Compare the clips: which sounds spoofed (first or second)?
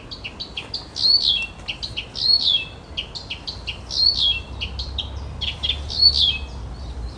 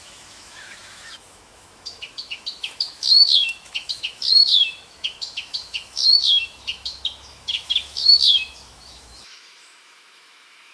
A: second